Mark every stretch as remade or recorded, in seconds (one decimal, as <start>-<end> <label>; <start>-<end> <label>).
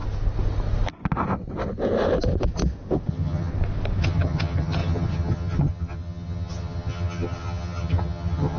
0.0-3.1 recorded; 3.1-3.5 remade; 3.5-4.0 recorded; 4.0-8.6 remade